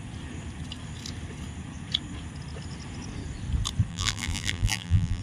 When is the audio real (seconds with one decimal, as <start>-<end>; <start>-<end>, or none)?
0.0-3.9